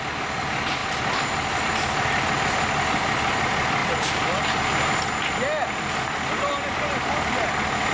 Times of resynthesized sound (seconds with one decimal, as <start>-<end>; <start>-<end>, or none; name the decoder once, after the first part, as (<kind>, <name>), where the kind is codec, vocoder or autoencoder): none